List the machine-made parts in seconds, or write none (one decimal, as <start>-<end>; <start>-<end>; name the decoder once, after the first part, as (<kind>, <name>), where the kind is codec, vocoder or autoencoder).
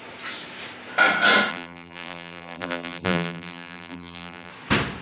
1.5-4.5 (vocoder, BigVGAN v2)